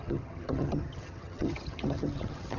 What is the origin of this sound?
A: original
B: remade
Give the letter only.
B